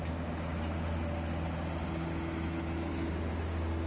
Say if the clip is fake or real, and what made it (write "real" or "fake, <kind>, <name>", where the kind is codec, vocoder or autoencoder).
real